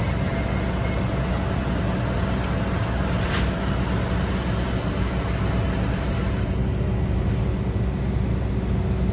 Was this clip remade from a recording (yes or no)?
no